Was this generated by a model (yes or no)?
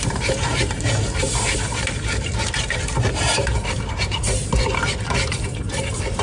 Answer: yes